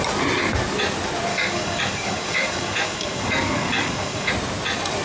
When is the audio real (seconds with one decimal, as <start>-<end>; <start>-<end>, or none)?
0.0-1.3; 4.3-5.0